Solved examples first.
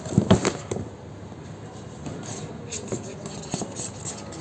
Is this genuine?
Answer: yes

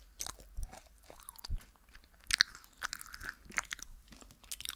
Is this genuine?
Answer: yes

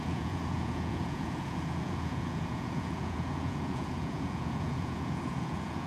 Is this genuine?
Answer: no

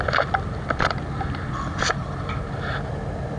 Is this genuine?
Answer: yes